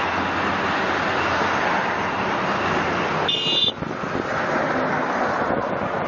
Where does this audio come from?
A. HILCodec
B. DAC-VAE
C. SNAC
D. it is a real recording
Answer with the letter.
D